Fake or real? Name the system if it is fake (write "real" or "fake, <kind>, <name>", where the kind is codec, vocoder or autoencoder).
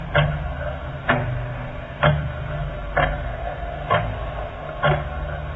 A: real